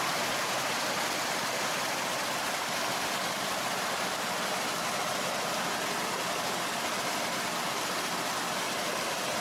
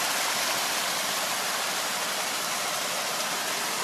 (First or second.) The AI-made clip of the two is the second